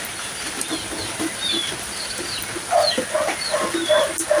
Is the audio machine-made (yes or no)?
no